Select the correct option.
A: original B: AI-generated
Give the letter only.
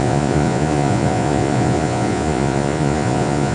B